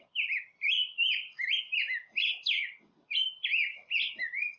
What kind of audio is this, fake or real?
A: real